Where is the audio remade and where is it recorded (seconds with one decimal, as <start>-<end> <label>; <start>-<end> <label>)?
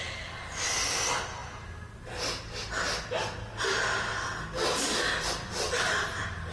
0.0-6.5 recorded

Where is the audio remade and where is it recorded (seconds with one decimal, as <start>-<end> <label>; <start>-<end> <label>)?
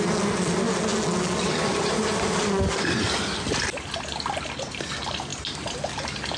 0.0-6.4 recorded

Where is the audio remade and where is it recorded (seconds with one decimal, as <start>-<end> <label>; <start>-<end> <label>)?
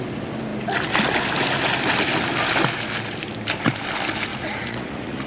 0.0-4.3 recorded; 4.3-5.3 remade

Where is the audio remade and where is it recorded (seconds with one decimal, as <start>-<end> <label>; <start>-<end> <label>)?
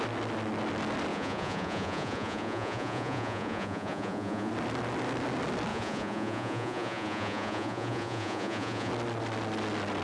0.0-1.1 recorded; 1.1-4.5 remade; 4.5-5.7 recorded; 5.7-8.9 remade; 8.9-10.0 recorded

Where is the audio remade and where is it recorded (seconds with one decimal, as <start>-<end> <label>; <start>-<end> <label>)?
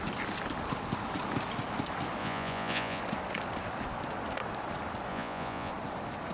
0.0-2.2 recorded; 2.2-3.0 remade; 3.0-5.1 recorded; 5.1-5.7 remade; 5.7-6.3 recorded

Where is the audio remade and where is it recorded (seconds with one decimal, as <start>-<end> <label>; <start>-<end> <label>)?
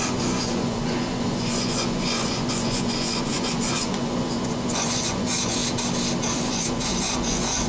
0.0-5.6 remade; 5.6-6.2 recorded; 6.2-7.7 remade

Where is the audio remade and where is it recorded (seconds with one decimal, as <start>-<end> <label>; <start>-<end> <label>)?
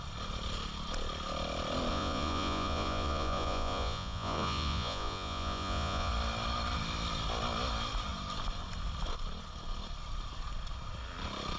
0.0-1.9 recorded; 1.9-6.1 remade; 6.1-11.6 recorded